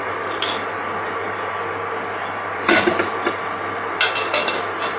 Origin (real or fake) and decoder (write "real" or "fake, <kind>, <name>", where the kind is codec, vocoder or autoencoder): real